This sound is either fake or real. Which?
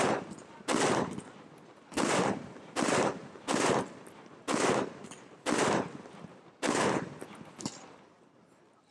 real